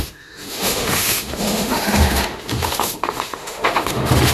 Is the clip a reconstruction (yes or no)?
yes